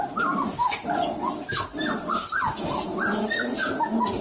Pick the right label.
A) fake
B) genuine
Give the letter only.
B